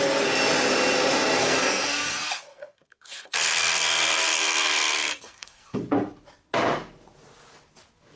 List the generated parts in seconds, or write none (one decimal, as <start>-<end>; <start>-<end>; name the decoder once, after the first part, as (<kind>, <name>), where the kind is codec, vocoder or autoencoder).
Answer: 1.4-5.8 (codec, SNAC)